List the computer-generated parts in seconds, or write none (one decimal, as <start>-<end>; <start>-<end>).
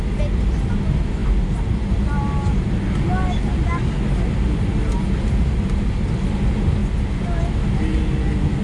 none